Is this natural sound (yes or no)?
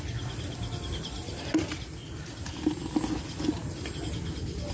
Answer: yes